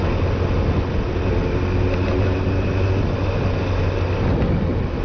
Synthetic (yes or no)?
no